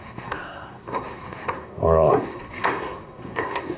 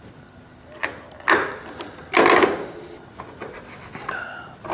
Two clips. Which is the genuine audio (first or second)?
second